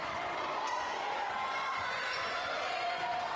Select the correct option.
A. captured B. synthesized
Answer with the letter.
B